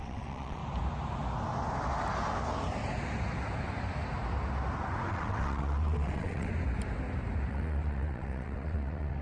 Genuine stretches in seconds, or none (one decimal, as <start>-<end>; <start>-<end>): 0.6-5.1; 6.5-7.5